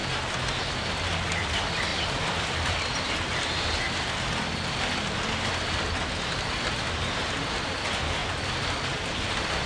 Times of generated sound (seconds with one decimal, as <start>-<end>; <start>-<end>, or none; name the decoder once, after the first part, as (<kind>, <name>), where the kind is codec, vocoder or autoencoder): 1.9-3.1 (vocoder, BigVGAN v2); 8.2-9.0